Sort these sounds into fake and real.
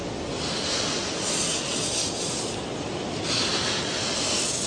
real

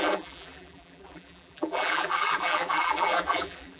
fake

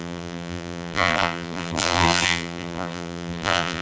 fake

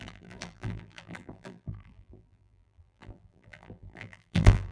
fake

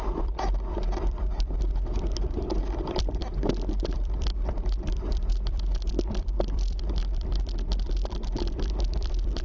fake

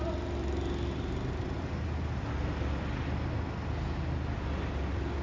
real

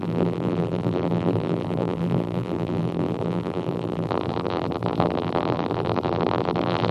fake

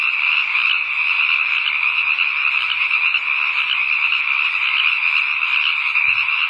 real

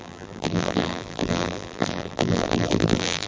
fake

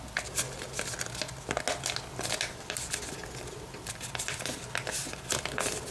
real